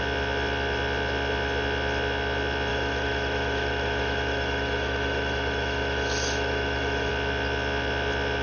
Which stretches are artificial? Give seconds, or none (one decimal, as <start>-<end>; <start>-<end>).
2.7-7.1